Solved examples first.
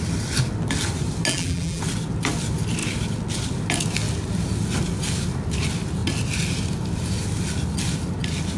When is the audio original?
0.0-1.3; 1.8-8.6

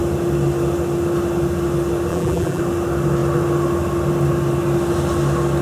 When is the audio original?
0.0-2.1; 2.6-5.6

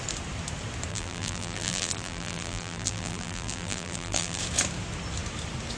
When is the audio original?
0.0-0.9; 4.4-5.8

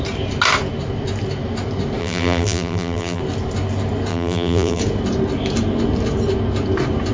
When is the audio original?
0.0-2.0; 3.2-4.1; 4.8-7.1